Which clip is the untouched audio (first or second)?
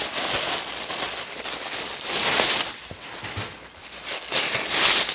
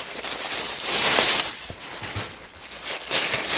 first